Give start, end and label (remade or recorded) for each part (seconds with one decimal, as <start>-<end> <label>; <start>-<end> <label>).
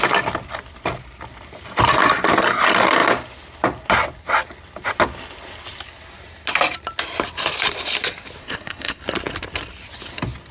0.0-8.4 recorded; 8.4-9.0 remade; 9.0-10.5 recorded